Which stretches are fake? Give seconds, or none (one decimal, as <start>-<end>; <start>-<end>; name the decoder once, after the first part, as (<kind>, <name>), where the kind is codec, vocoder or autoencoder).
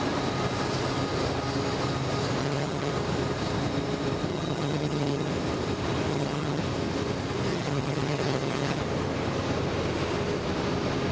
2.4-2.9 (vocoder, HiFi-GAN); 4.3-5.3; 6.1-6.6; 7.5-8.8